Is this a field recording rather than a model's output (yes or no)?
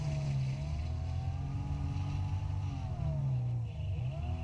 yes